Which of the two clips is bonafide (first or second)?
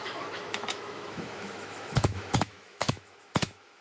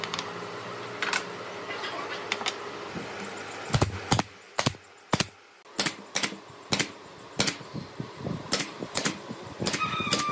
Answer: second